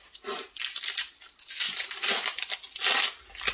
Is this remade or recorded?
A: recorded